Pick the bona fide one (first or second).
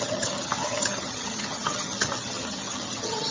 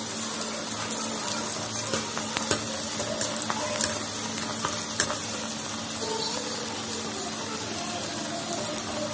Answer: second